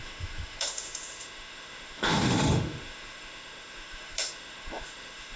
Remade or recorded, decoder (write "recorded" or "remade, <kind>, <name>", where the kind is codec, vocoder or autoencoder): remade, autoencoder, DAC-VAE